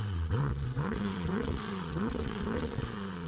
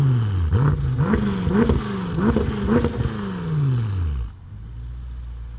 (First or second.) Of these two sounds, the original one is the second